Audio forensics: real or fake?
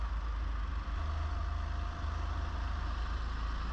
real